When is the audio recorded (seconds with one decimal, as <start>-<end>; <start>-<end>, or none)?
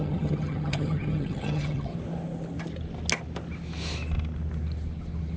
1.9-5.4